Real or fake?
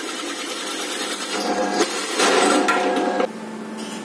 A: real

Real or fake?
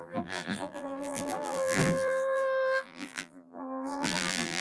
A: fake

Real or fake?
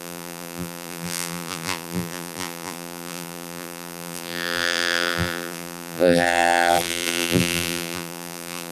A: fake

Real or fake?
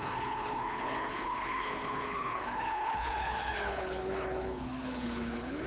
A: fake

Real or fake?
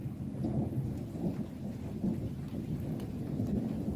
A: real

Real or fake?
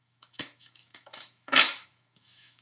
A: fake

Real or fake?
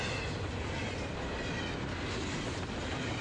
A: real